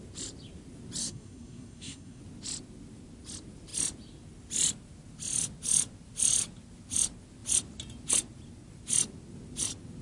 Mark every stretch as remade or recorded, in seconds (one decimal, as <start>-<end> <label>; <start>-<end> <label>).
0.0-1.0 recorded; 1.0-2.2 remade; 2.2-10.0 recorded